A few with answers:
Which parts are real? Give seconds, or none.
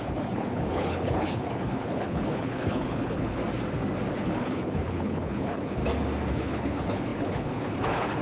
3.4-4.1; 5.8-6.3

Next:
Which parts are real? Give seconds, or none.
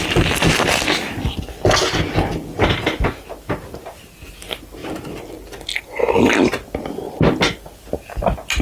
0.0-2.6; 4.0-8.6